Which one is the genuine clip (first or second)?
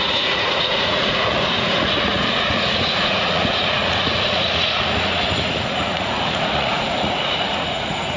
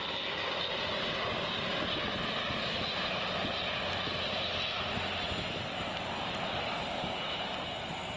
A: second